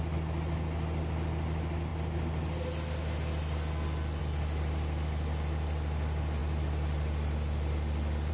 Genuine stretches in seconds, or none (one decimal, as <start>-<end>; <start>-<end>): 0.0-8.3

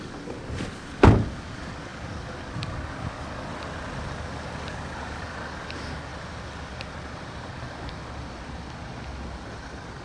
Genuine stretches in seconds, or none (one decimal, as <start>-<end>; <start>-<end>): 3.5-4.2; 6.1-7.5; 8.0-9.6

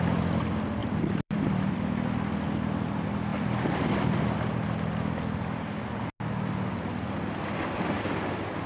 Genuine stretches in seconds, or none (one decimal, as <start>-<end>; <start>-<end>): 0.0-0.8; 1.7-8.7